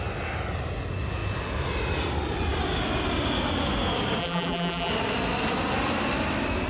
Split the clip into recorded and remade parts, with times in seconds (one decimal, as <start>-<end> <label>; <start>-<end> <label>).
0.0-4.2 recorded; 4.2-4.9 remade; 4.9-6.7 recorded